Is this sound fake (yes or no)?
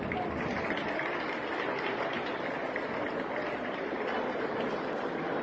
no